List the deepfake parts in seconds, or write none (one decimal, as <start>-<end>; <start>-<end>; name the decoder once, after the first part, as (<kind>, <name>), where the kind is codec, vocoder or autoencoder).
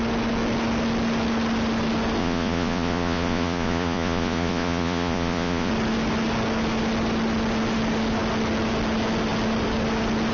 2.2-5.7 (vocoder, Vocos)